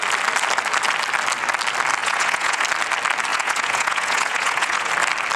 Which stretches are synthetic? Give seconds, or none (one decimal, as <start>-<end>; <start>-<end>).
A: 2.0-2.6; 3.3-4.9